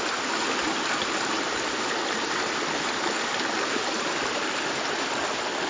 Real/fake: real